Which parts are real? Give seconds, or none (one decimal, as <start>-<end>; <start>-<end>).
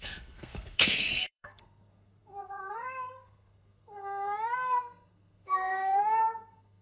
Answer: none